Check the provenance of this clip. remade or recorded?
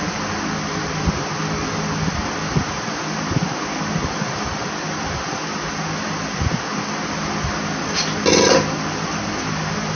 recorded